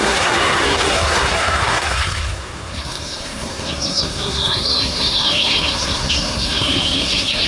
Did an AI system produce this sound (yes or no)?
yes